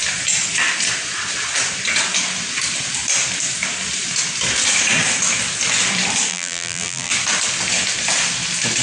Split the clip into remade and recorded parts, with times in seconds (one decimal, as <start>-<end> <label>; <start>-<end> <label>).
0.0-6.3 recorded; 6.3-7.1 remade; 7.1-8.8 recorded